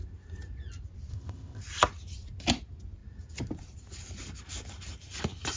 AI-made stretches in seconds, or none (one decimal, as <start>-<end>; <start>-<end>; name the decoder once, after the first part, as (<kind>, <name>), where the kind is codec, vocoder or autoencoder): 1.1-1.6 (codec, ZipCodec)